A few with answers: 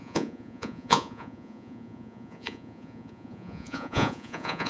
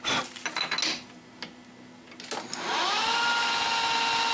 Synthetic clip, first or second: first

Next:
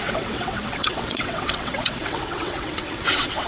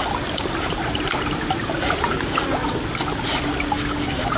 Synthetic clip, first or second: first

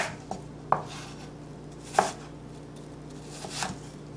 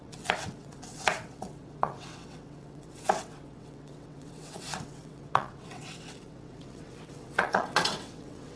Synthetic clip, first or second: second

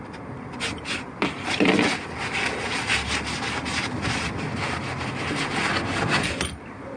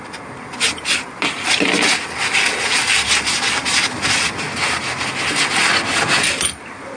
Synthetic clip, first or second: first